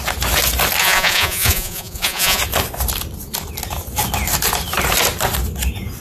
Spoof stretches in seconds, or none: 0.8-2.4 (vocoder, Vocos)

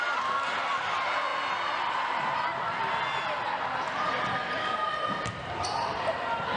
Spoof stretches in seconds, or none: none

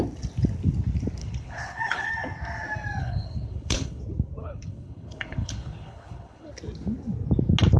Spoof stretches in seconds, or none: 1.2-2.1 (codec, HILCodec); 3.0-4.0; 4.4-6.5

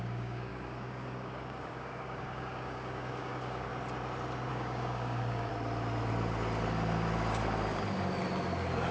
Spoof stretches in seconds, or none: 0.0-3.7 (codec, DAC); 4.5-5.5

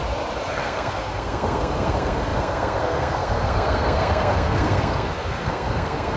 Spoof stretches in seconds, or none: 0.5-6.2 (codec, SNAC)

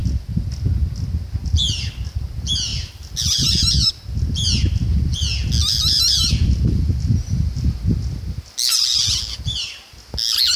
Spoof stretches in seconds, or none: 2.7-3.9 (vocoder, BigVGAN v2); 5.7-7.8